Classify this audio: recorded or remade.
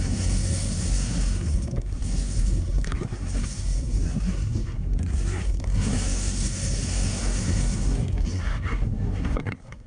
remade